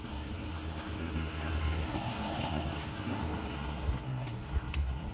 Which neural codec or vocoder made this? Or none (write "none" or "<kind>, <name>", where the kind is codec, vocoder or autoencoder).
codec, SNAC